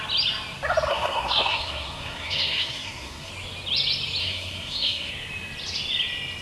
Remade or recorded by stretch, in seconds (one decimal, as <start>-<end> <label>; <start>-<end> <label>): 0.0-0.9 recorded; 0.9-3.3 remade; 3.3-4.2 recorded; 4.2-5.1 remade; 5.1-6.4 recorded